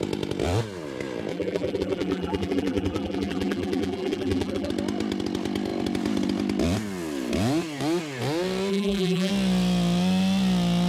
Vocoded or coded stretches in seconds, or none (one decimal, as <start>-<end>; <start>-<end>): 1.3-4.7; 8.7-9.3